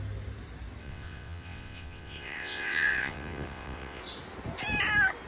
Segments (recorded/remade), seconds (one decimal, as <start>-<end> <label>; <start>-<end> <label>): 0.0-0.8 recorded; 0.8-4.0 remade; 4.0-5.3 recorded